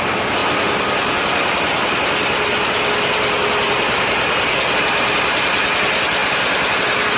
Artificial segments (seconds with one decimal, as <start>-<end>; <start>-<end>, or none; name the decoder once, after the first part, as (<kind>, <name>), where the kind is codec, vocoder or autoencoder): none